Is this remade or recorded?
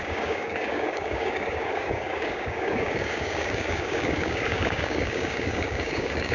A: remade